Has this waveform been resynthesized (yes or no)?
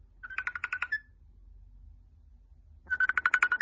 no